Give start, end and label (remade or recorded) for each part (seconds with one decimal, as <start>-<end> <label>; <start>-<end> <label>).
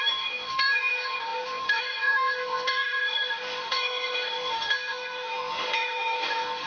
0.0-6.7 remade